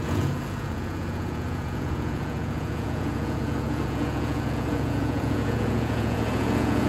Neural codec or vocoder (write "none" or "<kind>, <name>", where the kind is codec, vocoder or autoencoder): vocoder, Vocos